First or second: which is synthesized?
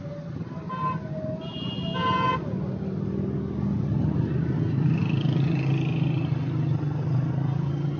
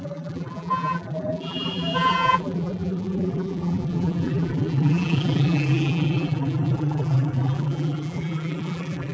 second